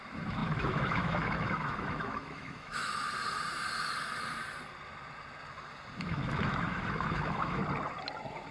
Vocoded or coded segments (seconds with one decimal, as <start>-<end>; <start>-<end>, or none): 0.0-2.9; 6.0-7.6